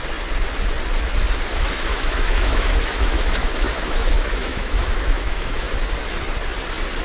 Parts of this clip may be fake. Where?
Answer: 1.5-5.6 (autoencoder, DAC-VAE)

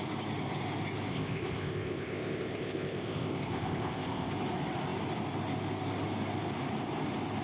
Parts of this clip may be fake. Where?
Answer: 1.1-4.3 (codec, ZipCodec)

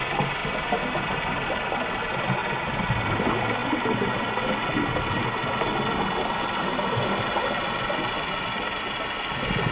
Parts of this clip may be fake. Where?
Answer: none